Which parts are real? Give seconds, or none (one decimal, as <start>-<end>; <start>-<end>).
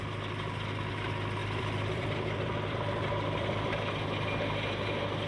0.0-1.4; 3.9-5.3